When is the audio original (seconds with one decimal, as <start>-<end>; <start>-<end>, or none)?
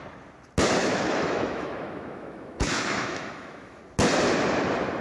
0.0-0.8; 3.8-5.0